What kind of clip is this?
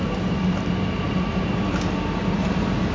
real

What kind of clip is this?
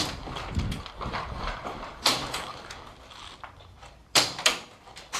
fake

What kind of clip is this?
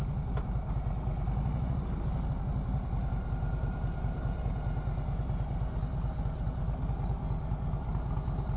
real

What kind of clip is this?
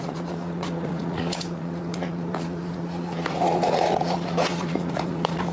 fake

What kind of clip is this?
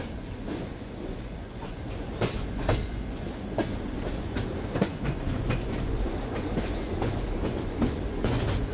fake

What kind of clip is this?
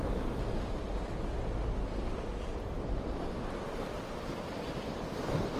fake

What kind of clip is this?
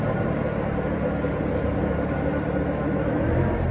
real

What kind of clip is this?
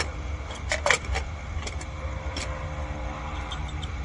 real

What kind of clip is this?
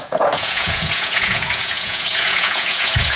fake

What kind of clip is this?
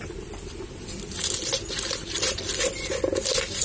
real